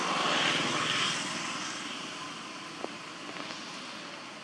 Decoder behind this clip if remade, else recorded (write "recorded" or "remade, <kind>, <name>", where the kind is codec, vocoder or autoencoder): recorded